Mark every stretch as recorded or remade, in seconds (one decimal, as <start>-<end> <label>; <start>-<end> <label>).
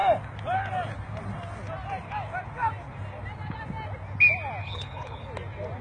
0.0-4.6 recorded; 4.6-5.3 remade; 5.3-5.8 recorded